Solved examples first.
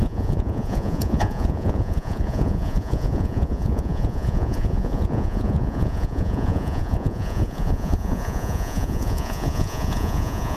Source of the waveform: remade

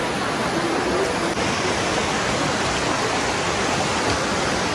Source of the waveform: recorded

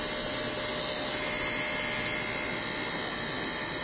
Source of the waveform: recorded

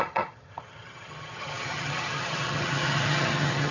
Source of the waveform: remade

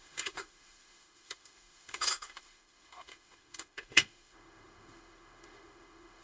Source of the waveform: remade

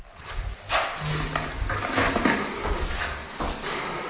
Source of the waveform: recorded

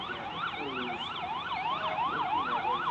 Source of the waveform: recorded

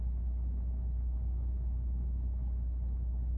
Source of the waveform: remade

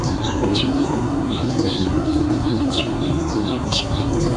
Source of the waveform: remade